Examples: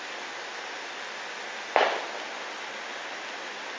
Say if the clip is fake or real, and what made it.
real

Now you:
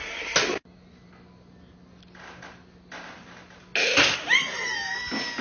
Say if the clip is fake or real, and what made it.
real